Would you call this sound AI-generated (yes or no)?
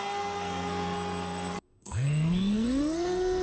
yes